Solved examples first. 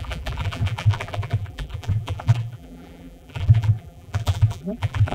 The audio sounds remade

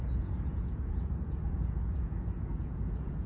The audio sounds remade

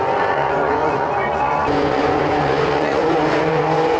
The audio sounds remade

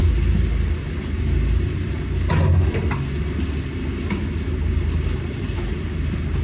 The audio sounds recorded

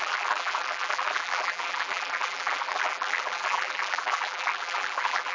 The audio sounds remade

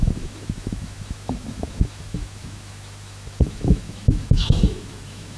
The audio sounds remade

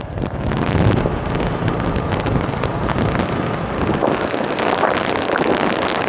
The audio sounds recorded